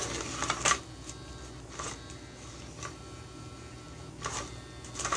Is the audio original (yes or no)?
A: yes